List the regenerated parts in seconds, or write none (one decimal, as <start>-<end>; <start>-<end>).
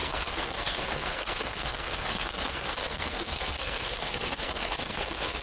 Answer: 0.0-5.4